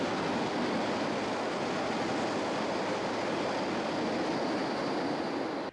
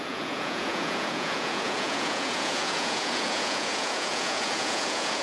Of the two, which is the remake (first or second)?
second